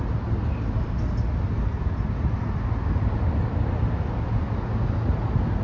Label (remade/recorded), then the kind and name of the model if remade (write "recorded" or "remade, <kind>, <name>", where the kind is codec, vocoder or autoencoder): recorded